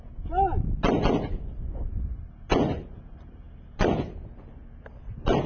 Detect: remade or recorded recorded